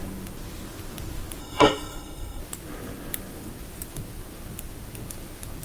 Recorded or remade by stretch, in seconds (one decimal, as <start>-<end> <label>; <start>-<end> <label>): 0.0-1.4 recorded; 1.4-2.4 remade; 2.4-5.6 recorded